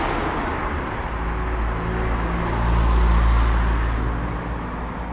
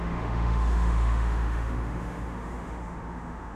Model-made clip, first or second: second